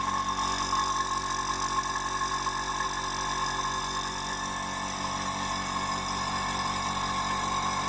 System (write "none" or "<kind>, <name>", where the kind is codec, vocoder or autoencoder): none